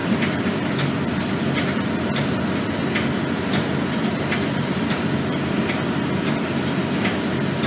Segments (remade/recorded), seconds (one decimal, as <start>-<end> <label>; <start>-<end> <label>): 0.0-0.7 remade; 0.7-7.7 recorded